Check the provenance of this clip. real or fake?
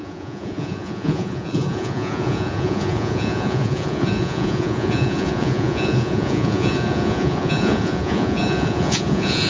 fake